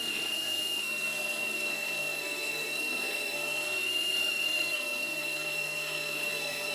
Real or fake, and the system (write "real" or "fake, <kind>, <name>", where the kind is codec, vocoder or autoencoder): fake, codec, SNAC